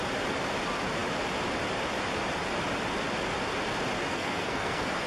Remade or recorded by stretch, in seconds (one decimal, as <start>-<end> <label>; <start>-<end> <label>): 0.0-4.1 recorded; 4.1-5.1 remade